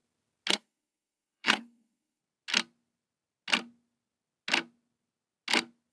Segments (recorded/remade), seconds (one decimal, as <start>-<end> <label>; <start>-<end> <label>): 0.0-0.5 recorded; 0.5-2.2 remade; 2.2-5.9 recorded